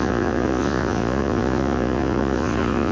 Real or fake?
fake